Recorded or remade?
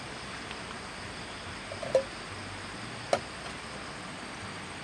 recorded